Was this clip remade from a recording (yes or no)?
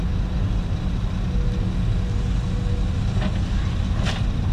no